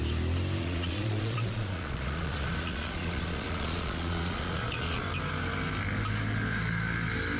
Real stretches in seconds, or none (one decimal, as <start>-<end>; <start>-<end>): 0.0-0.6; 5.0-7.4